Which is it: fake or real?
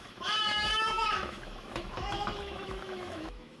fake